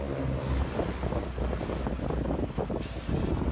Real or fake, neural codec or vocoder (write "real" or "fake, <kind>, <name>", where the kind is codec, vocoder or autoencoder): real